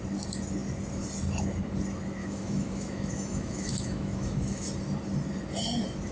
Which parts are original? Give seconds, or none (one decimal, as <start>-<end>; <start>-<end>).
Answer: 0.0-2.2; 4.7-6.1